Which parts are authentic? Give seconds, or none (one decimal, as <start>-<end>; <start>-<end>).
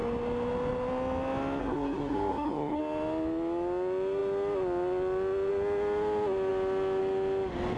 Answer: 0.0-1.6; 2.8-7.8